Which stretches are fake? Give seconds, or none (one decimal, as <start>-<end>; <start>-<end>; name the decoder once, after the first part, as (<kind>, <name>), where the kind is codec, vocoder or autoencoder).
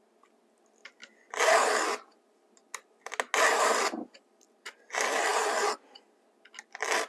none